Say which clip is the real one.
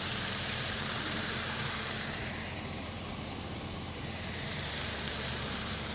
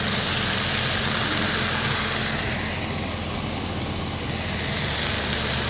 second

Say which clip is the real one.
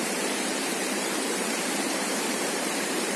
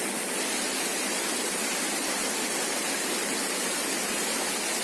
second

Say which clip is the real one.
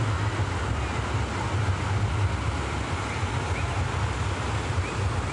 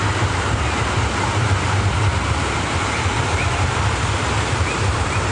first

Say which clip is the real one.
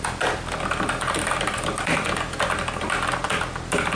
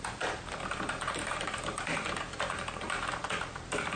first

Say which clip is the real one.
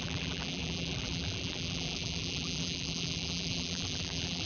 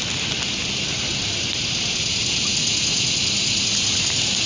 second